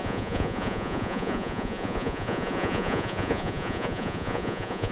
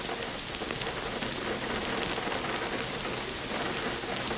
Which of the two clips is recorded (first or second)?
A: second